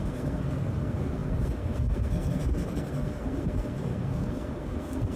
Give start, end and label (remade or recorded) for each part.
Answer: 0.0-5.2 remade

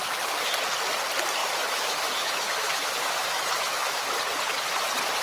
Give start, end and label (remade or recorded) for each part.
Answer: 0.0-0.5 remade; 0.5-1.4 recorded; 1.4-4.1 remade; 4.1-5.2 recorded

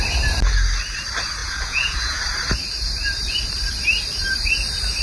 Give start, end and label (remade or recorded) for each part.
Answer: 0.0-1.4 recorded; 1.4-2.2 remade; 2.2-5.0 recorded

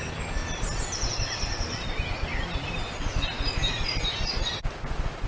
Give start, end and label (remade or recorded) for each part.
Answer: 0.0-5.3 recorded

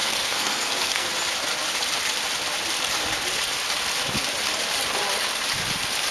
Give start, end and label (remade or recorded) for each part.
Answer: 0.0-1.1 remade; 1.1-6.1 recorded

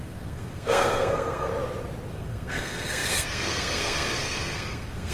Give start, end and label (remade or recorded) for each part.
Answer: 0.0-1.5 remade; 1.5-2.1 recorded; 2.1-5.1 remade